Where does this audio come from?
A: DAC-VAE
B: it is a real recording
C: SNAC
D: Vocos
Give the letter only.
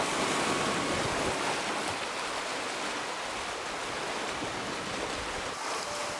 B